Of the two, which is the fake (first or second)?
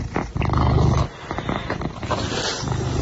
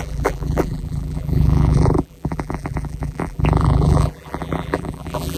second